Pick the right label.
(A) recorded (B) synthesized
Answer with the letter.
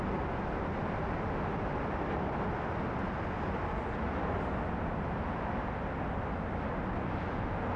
A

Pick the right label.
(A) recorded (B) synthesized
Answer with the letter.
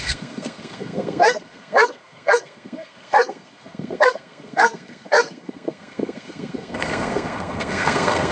B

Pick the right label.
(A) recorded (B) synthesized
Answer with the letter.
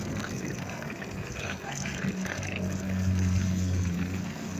B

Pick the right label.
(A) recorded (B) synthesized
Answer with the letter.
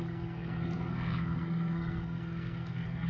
B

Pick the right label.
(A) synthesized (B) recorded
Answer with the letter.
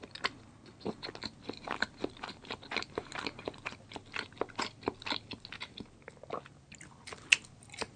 B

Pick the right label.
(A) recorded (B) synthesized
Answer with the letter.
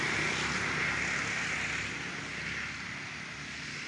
A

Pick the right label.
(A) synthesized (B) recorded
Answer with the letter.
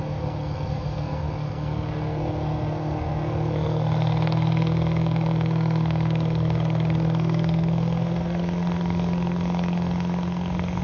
A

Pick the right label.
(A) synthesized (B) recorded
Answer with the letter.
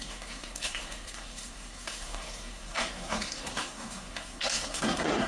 A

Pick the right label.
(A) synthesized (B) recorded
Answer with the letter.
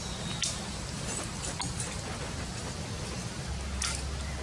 B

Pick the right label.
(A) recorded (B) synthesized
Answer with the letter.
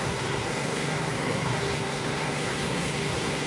B